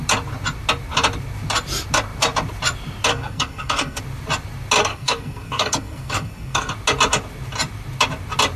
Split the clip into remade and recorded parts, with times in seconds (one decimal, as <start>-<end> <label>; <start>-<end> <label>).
0.0-3.1 recorded; 3.1-4.0 remade; 4.0-4.8 recorded; 4.8-6.7 remade; 6.7-8.6 recorded